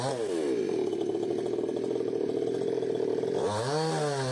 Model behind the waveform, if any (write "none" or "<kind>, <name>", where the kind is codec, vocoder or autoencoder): none